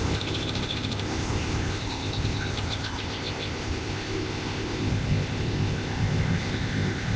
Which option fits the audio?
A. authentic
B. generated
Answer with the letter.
B